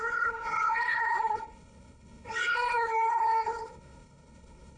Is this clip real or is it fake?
fake